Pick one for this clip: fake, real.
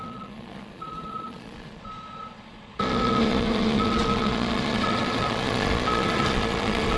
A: fake